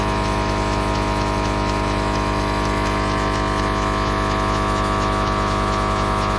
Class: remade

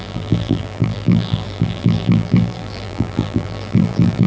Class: remade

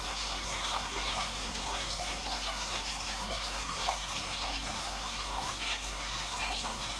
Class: remade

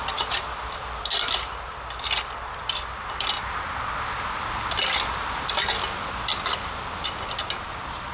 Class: recorded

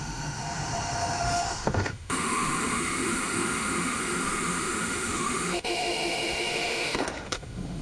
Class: remade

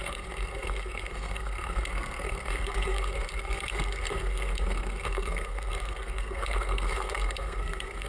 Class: remade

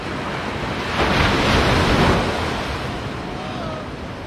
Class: recorded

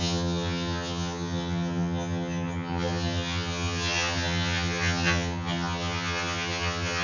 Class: remade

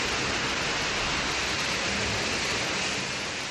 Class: recorded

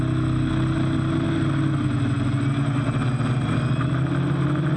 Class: recorded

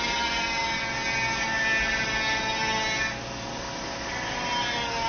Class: recorded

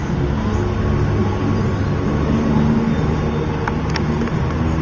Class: recorded